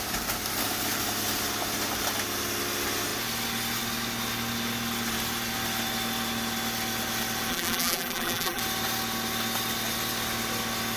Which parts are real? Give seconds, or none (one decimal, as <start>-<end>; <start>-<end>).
0.0-7.5; 8.6-11.0